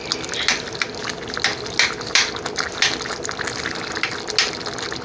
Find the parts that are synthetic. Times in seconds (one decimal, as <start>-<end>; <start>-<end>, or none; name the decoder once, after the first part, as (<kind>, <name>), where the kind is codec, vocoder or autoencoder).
none